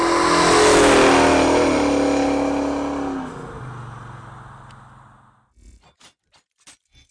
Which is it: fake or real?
real